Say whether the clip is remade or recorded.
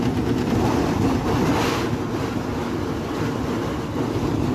recorded